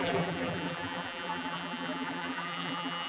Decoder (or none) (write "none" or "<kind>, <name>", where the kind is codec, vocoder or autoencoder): vocoder, BigVGAN v2